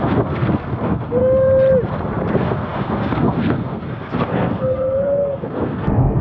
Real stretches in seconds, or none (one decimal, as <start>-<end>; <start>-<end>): 1.2-2.3